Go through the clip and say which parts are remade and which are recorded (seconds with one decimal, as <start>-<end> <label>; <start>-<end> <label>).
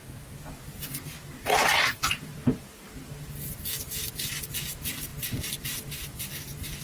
0.0-6.8 recorded